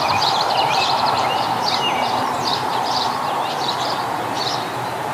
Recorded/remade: remade